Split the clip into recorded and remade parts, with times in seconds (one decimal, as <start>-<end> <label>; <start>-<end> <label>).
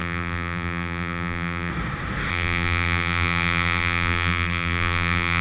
0.0-1.7 remade; 1.7-2.3 recorded; 2.3-5.4 remade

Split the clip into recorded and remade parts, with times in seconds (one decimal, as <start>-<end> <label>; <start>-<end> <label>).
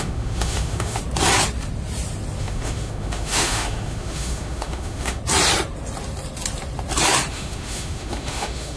0.0-1.0 remade; 1.0-2.4 recorded; 2.4-5.2 remade; 5.2-7.3 recorded; 7.3-8.8 remade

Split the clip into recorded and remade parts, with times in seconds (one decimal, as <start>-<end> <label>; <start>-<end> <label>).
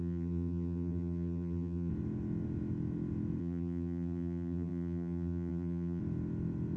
0.0-1.9 remade; 1.9-3.4 recorded; 3.4-6.0 remade; 6.0-6.8 recorded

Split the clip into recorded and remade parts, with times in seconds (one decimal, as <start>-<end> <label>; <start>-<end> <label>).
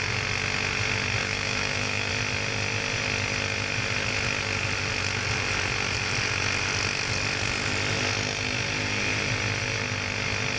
0.0-1.2 recorded; 1.2-2.1 remade; 2.1-10.6 recorded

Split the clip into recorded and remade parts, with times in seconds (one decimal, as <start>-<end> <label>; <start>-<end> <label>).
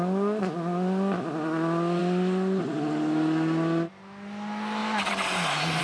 0.0-5.8 recorded